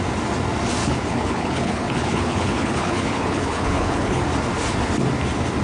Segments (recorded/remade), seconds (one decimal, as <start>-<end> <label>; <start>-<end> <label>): 0.0-0.8 recorded; 0.8-4.2 remade; 4.2-5.6 recorded